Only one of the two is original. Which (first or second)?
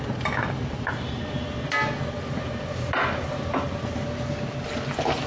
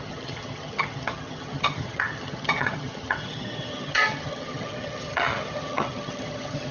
first